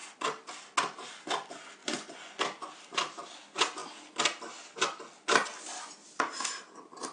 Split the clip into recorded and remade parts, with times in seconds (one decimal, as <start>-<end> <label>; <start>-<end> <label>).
0.0-1.8 recorded; 1.8-2.4 remade; 2.4-7.1 recorded